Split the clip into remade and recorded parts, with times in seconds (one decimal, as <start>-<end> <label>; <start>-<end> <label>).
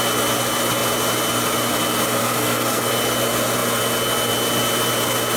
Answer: 0.0-2.2 recorded; 2.2-2.9 remade; 2.9-5.4 recorded